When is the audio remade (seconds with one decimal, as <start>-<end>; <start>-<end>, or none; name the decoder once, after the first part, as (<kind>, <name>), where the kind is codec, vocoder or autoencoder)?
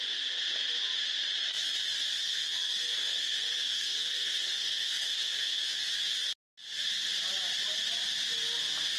2.2-5.6 (codec, SNAC)